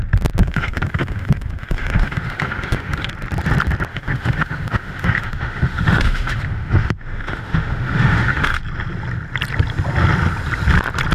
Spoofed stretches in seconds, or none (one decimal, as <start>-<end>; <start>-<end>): 0.4-3.1; 3.9-8.6